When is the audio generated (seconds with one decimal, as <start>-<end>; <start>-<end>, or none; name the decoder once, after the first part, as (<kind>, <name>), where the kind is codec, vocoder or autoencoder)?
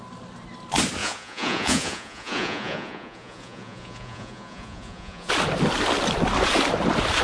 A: 1.0-5.3 (vocoder, Vocos)